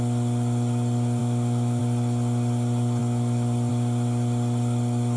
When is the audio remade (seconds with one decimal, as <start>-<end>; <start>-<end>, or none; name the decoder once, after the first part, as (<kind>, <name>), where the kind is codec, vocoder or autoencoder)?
1.2-1.8 (autoencoder, DAC-VAE)